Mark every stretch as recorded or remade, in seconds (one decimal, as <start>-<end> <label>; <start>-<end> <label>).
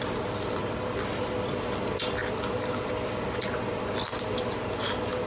0.0-0.6 recorded; 0.6-1.3 remade; 1.3-5.3 recorded